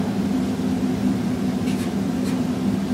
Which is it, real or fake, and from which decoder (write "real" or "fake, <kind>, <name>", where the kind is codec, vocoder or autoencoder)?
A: real